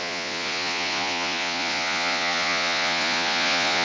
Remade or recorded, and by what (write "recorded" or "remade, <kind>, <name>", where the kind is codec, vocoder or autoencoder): remade, vocoder, Vocos